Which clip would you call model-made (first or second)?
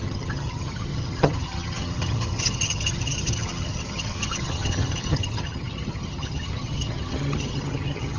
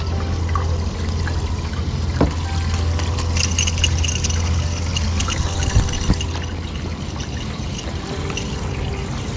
first